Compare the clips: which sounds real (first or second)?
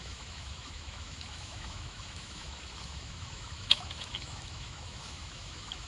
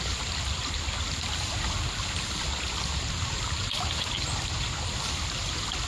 second